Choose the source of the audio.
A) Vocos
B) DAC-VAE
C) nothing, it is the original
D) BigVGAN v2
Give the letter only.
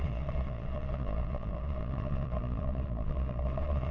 A